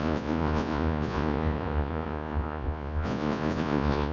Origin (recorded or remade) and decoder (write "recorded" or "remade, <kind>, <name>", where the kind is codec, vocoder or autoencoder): remade, vocoder, Vocos